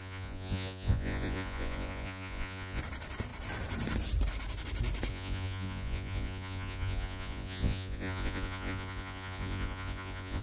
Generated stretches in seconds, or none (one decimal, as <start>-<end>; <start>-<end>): 0.0-2.8; 5.1-10.4